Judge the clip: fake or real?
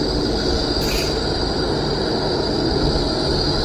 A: real